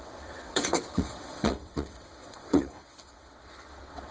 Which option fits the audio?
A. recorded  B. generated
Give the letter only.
B